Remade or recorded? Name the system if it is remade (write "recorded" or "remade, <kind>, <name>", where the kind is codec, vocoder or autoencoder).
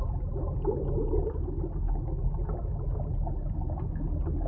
recorded